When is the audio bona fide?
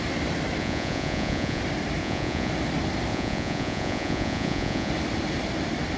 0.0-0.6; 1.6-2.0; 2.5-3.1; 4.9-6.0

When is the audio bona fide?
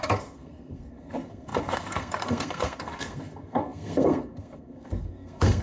none